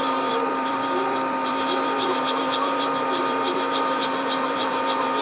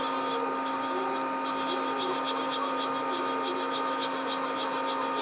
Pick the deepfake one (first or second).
first